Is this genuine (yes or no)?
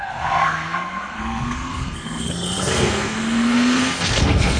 no